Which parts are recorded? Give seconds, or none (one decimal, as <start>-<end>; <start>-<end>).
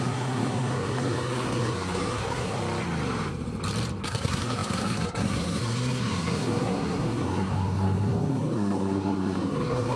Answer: 2.6-4.0